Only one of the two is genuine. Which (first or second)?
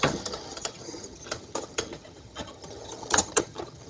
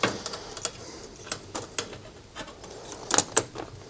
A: second